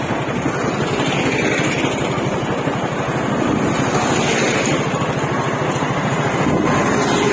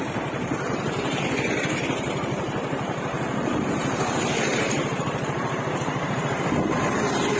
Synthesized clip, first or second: second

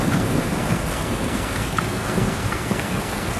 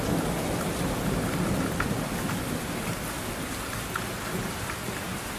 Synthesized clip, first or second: first